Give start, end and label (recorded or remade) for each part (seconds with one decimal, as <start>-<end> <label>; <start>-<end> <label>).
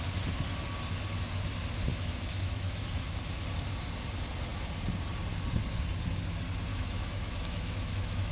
0.0-1.9 recorded; 1.9-3.2 remade; 3.2-6.7 recorded; 6.7-8.3 remade